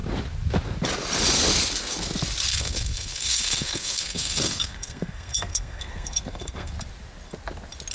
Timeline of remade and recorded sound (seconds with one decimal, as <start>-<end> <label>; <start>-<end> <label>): 0.0-2.5 recorded; 2.5-6.7 remade; 6.7-7.9 recorded